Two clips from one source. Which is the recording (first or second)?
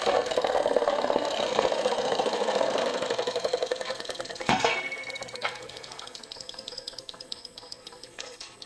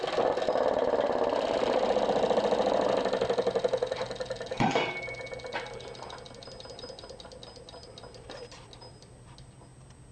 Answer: second